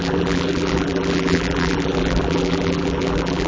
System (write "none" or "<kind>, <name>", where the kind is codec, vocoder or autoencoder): vocoder, BigVGAN v2